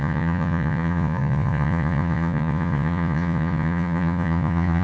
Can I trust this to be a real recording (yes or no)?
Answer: no